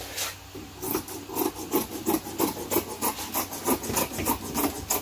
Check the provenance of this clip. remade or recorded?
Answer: recorded